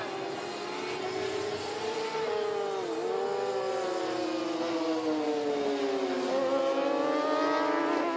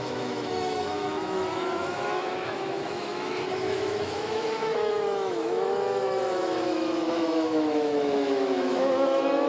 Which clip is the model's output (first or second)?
second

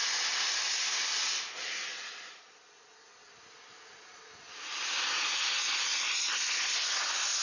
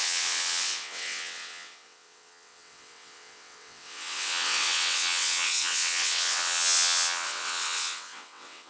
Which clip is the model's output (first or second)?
second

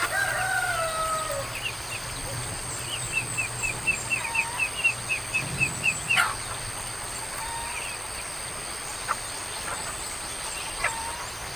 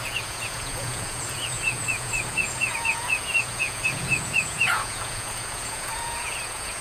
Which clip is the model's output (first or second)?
second